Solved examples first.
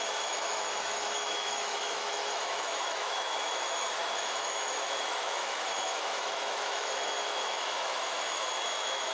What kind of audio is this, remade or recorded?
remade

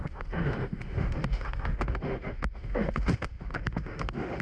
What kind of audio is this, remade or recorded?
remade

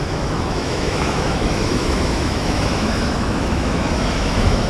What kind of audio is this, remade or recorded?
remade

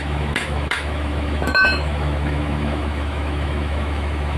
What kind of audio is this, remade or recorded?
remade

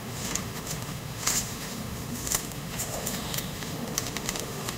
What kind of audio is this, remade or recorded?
remade